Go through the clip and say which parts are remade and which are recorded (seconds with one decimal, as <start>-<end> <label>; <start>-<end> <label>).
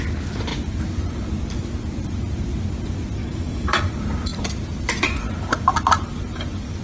0.0-3.2 recorded; 3.2-3.8 remade; 3.8-6.8 recorded